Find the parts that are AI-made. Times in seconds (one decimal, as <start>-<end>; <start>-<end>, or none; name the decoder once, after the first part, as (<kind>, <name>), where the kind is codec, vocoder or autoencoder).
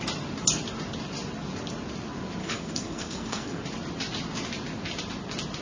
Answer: 2.4-3.6 (codec, SNAC)